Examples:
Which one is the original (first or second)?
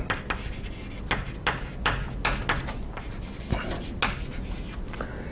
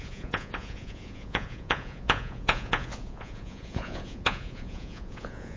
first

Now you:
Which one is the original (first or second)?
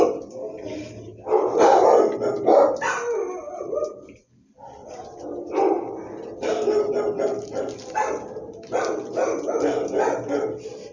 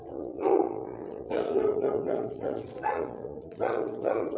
first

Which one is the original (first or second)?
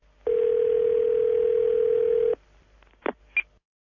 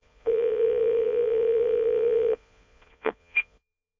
first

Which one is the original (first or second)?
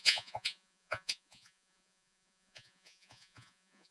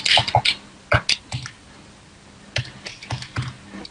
second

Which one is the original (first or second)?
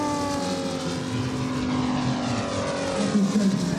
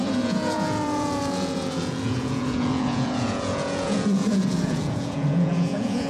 first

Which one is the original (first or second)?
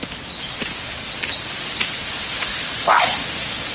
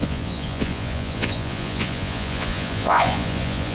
first